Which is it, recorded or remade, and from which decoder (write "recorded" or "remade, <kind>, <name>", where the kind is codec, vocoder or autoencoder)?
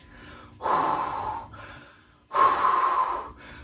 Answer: remade, vocoder, BigVGAN v2